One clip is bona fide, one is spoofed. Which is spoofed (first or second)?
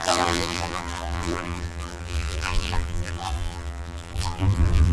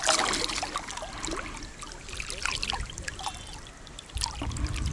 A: first